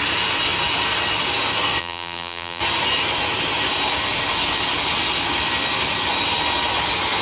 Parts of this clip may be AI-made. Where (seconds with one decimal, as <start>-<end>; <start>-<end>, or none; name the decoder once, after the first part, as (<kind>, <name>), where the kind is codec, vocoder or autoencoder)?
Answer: 1.8-2.6 (vocoder, BigVGAN v2)